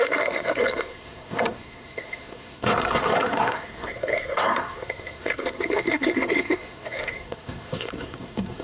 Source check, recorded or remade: remade